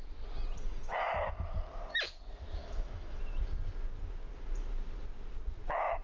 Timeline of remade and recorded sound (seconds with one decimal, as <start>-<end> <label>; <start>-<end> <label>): 0.0-0.7 recorded; 0.7-1.4 remade; 1.4-2.6 recorded; 2.6-3.2 remade; 3.2-6.0 recorded

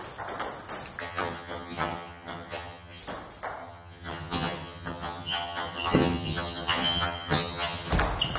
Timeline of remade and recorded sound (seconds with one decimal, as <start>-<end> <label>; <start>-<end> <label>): 0.0-1.0 recorded; 1.0-3.0 remade; 3.0-3.6 recorded; 3.6-7.9 remade; 7.9-8.4 recorded